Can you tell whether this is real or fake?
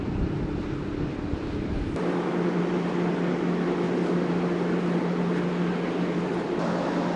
real